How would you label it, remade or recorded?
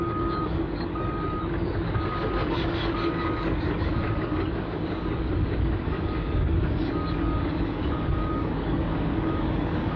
remade